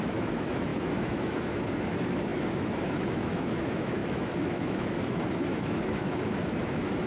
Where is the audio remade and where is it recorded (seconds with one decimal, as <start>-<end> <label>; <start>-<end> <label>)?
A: 0.0-7.1 remade